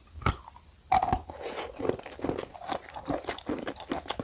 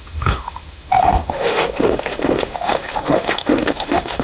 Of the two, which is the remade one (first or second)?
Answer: second